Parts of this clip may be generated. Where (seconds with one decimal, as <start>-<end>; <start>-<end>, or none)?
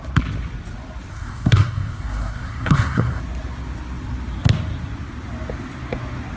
1.1-3.2